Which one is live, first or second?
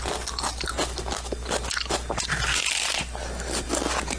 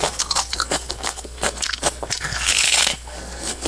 first